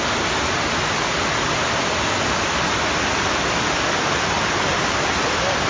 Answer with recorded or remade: recorded